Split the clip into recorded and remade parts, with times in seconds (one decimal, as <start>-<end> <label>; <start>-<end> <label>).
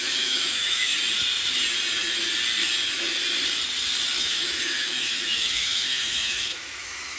0.0-0.9 remade; 0.9-4.2 recorded; 4.2-7.2 remade